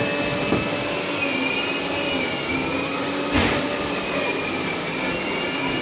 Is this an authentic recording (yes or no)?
yes